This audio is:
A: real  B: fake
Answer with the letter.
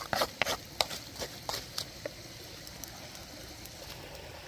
A